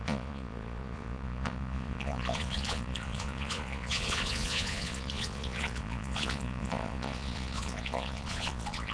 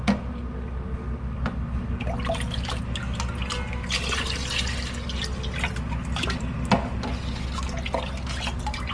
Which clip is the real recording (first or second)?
second